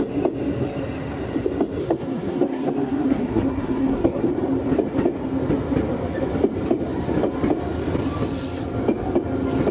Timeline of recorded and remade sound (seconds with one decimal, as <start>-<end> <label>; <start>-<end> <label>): 0.0-1.8 recorded; 1.8-4.3 remade; 4.3-9.7 recorded